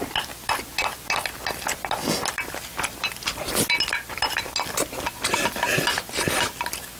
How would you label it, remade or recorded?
recorded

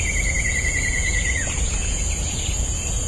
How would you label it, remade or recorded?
remade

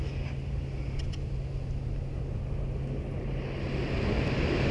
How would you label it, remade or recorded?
recorded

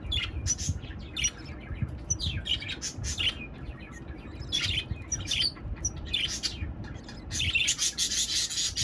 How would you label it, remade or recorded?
recorded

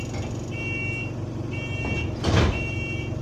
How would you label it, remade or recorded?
recorded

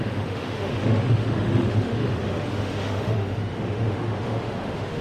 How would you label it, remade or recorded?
remade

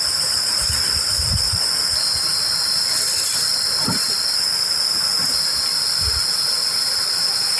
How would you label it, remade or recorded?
recorded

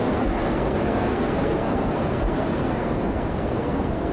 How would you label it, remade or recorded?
remade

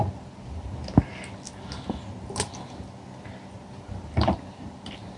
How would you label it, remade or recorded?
recorded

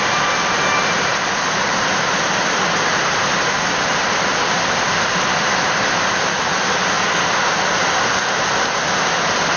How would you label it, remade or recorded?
recorded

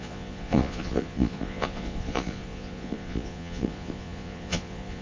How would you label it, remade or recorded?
remade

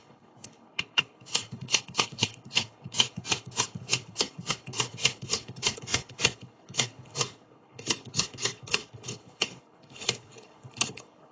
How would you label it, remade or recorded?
remade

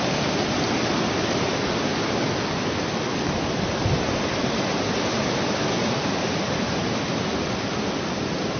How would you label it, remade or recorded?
recorded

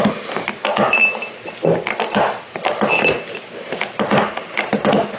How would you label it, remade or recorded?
recorded